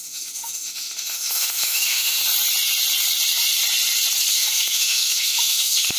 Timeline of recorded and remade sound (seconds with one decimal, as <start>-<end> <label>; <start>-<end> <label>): 0.0-2.2 remade; 2.2-4.3 recorded; 4.3-6.0 remade

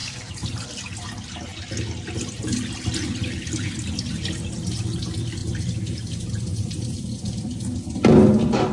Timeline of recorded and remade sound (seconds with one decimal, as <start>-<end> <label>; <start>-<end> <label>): 0.0-0.8 remade; 0.8-5.4 recorded; 5.4-7.4 remade; 7.4-8.7 recorded

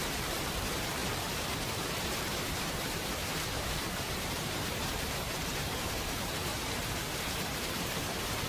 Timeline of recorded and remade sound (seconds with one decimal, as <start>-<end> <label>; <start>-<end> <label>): 0.0-6.5 remade; 6.5-8.5 recorded